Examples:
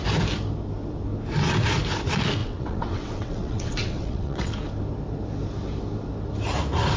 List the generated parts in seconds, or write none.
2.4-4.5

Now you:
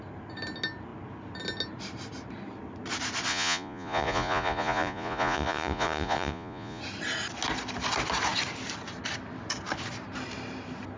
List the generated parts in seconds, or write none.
3.3-6.8

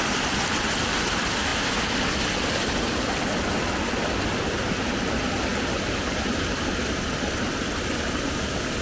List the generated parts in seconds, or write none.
none

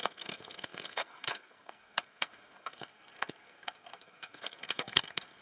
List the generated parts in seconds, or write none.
0.0-5.4

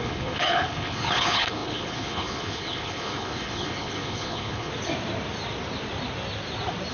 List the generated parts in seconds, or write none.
0.0-4.7

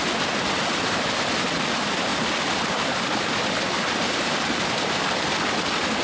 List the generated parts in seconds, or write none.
2.1-4.3

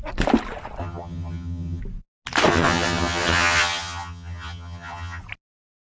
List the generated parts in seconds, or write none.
0.8-1.8; 2.5-5.2

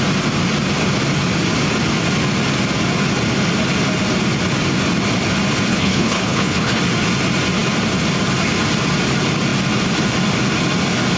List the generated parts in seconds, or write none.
5.7-6.8